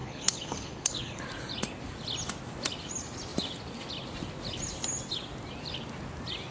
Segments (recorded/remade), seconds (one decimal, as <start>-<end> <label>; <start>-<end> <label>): 0.0-1.2 remade; 1.2-6.5 recorded